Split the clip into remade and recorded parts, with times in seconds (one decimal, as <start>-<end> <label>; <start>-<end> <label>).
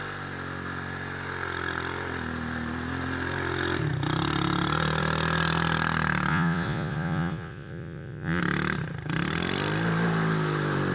0.0-6.3 recorded; 6.3-8.4 remade; 8.4-10.9 recorded